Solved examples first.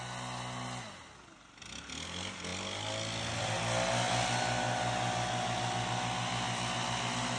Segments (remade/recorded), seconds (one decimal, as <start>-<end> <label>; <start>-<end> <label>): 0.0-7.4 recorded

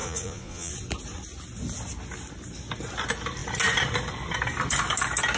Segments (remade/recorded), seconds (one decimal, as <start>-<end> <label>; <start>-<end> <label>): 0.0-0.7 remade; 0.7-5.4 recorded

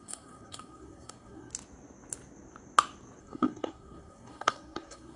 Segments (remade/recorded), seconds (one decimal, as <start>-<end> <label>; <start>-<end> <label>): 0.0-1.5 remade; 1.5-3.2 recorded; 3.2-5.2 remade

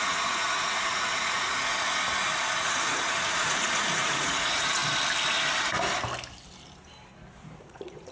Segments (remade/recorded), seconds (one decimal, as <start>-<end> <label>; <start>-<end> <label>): 0.0-1.7 remade; 1.7-2.6 recorded; 2.6-4.8 remade; 4.8-7.4 recorded; 7.4-8.1 remade

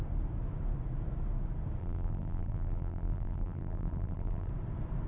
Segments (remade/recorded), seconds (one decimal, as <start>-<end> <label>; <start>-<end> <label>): 0.0-1.8 recorded; 1.8-4.5 remade; 4.5-5.1 recorded